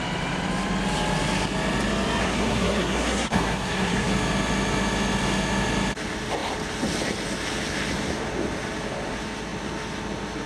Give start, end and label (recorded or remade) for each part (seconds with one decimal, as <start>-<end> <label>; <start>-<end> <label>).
0.0-2.2 recorded; 2.2-4.1 remade; 4.1-10.5 recorded